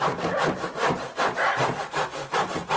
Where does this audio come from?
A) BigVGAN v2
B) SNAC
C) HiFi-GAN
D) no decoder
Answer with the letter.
A